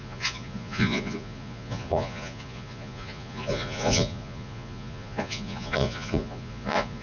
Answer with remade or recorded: remade